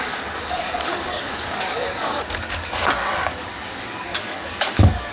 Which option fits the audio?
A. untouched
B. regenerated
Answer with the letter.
B